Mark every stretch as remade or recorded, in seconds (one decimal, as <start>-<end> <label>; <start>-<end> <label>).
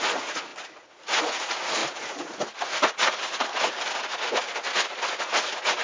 0.0-4.5 remade; 4.5-5.1 recorded; 5.1-5.8 remade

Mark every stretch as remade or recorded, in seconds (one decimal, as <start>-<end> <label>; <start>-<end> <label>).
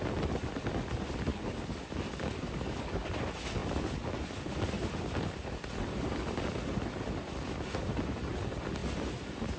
0.0-1.3 recorded; 1.3-3.1 remade; 3.1-9.6 recorded